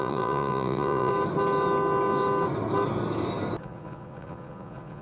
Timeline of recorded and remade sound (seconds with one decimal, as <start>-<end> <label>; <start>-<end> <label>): 0.0-1.1 remade; 1.1-3.6 recorded; 3.6-5.0 remade